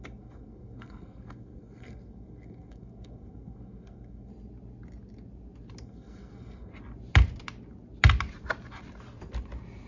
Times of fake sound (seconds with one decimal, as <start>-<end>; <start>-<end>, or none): 0.0-4.3; 5.8-6.7